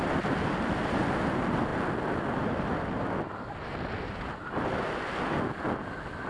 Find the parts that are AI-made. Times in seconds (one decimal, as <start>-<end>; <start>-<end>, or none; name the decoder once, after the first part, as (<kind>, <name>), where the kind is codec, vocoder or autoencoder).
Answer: none